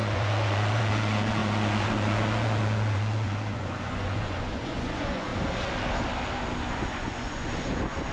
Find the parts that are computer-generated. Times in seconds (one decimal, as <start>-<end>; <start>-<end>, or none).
0.0-5.3; 6.7-8.1